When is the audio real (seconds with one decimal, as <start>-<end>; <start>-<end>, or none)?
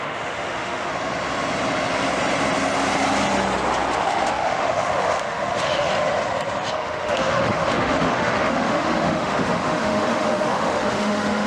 0.9-3.9; 5.9-6.7